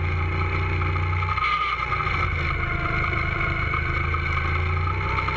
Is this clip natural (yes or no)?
yes